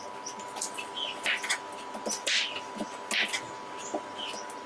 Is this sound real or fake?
real